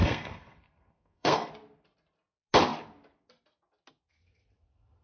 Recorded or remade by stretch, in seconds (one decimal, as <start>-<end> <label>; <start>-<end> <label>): 0.0-1.5 remade; 1.5-5.0 recorded